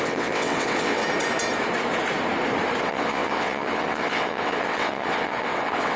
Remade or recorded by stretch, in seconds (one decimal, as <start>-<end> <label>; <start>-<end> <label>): 0.0-1.0 remade; 1.0-2.8 recorded; 2.8-6.0 remade